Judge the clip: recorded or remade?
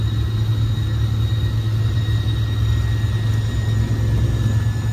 recorded